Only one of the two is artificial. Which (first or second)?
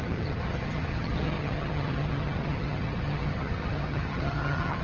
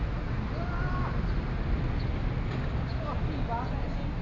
first